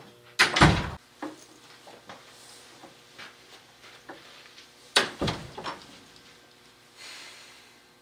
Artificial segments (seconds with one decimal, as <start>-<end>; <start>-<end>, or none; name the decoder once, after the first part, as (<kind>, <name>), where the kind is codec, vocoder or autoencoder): 0.4-1.5 (vocoder, BigVGAN v2); 2.8-5.3